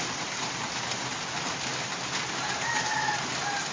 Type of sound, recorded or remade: recorded